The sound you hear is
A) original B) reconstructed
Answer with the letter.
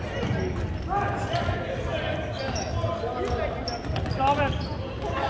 A